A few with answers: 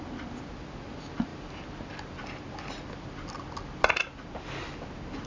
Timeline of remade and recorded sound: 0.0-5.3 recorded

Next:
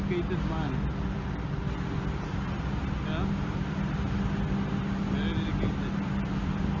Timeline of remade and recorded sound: 0.0-6.8 recorded

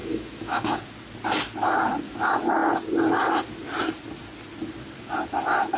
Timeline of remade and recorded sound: 0.0-0.8 remade; 0.8-5.8 recorded

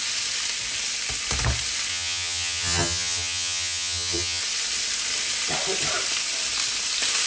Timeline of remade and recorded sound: 0.0-1.9 recorded; 1.9-4.4 remade; 4.4-7.3 recorded

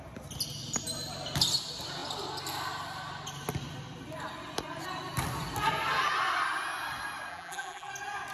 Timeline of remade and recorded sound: 0.0-7.3 recorded; 7.3-7.9 remade; 7.9-8.3 recorded